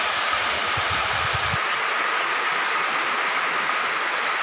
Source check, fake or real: real